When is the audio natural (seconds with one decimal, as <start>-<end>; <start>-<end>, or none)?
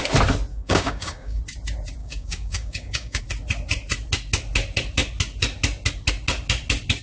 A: 0.0-0.5; 1.4-2.0; 3.2-7.0